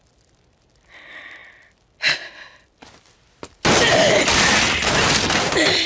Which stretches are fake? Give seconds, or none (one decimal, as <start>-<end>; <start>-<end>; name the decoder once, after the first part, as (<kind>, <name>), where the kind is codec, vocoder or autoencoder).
none